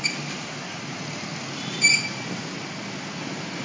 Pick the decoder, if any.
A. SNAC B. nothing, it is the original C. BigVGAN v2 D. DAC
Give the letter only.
B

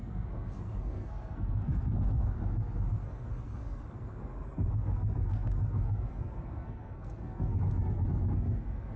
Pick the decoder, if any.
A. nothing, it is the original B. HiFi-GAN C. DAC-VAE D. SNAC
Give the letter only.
D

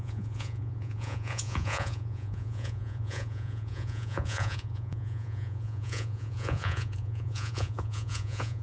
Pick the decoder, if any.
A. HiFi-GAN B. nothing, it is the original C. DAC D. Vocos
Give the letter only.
D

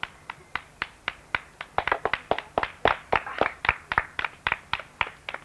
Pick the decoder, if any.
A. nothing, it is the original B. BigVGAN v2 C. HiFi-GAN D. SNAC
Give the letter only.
B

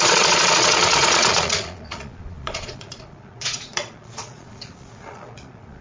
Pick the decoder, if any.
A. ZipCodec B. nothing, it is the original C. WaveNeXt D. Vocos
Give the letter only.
D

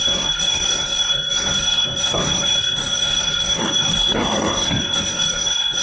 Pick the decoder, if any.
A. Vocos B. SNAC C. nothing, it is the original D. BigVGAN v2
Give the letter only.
B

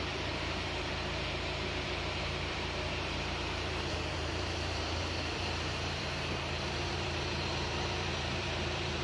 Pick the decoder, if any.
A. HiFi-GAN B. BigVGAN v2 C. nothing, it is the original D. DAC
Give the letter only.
B